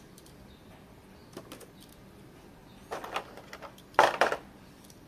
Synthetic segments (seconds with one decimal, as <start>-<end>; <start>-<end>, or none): 0.0-1.2; 2.2-2.6; 3.6-5.1